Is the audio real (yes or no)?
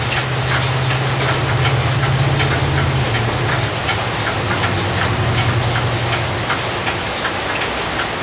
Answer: yes